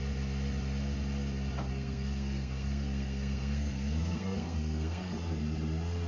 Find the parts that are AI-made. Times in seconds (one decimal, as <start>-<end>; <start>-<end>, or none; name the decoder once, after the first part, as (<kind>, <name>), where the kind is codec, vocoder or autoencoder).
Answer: 1.7-5.4 (codec, SNAC)